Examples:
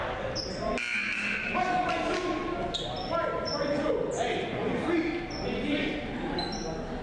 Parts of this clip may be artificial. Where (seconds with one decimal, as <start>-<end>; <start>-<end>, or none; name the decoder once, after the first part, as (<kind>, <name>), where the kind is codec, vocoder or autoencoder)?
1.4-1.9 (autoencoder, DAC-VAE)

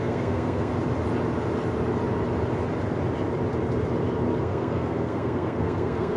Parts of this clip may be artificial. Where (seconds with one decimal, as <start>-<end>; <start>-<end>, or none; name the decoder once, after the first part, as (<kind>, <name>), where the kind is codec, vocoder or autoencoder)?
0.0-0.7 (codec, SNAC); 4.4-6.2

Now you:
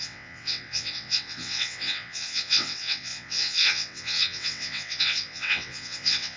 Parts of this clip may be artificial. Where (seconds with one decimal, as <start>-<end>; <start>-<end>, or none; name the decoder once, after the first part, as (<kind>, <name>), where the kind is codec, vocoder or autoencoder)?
0.0-6.4 (vocoder, WaveNeXt)